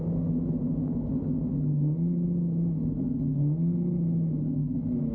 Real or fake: real